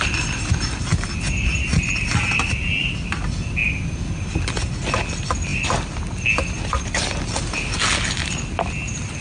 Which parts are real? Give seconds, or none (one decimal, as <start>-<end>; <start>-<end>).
0.0-9.2